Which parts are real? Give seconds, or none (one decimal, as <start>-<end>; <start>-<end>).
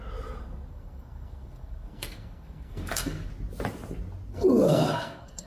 0.0-0.4; 3.3-4.3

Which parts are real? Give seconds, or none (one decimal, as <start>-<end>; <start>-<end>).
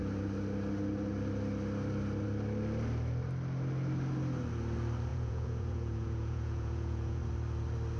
0.0-5.1; 7.2-8.0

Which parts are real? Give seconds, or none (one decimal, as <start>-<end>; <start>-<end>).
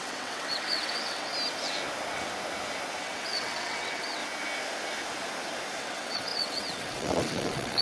1.3-3.0; 4.2-5.8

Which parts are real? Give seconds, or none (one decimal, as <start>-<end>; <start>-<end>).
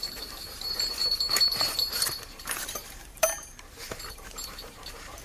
none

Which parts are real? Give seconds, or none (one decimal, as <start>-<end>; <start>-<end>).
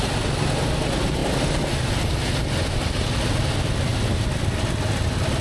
0.0-5.4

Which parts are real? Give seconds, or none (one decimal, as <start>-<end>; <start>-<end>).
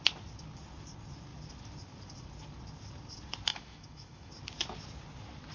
0.0-3.5; 4.3-5.5